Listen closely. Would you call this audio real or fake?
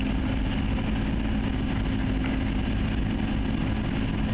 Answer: real